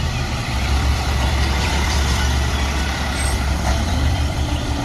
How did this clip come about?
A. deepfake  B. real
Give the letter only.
A